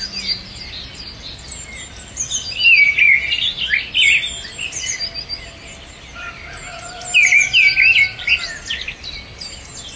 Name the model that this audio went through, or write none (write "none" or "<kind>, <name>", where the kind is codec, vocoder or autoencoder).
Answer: none